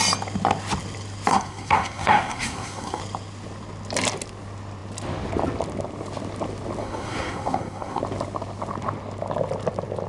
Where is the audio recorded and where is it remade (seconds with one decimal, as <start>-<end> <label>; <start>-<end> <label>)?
0.0-1.3 recorded; 1.3-3.0 remade; 3.0-6.8 recorded; 6.8-8.0 remade; 8.0-10.1 recorded